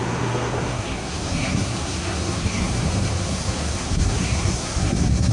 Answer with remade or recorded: remade